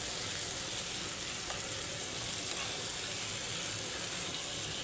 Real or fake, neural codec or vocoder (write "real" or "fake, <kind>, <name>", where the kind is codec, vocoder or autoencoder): real